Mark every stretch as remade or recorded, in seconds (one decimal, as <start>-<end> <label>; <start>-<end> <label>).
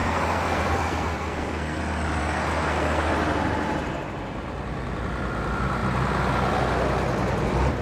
0.0-1.8 remade; 1.8-2.2 recorded; 2.2-3.1 remade; 3.1-7.8 recorded